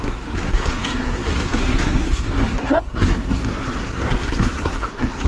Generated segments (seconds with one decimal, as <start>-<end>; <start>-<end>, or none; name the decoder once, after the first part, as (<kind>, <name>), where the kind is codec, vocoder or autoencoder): 0.0-5.3 (codec, SNAC)